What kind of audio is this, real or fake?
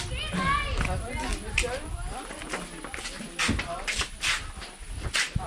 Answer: real